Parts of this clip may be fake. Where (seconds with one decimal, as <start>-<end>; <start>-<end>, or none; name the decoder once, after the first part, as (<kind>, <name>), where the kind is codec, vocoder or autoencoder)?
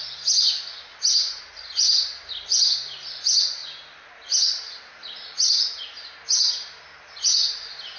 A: none